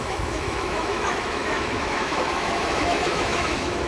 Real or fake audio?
fake